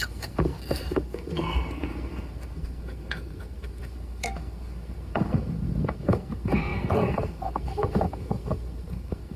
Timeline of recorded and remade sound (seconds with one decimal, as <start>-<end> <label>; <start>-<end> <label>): 0.0-9.4 remade